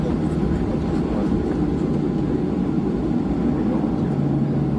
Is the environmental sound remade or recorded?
recorded